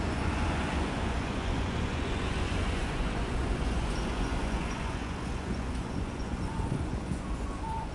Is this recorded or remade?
remade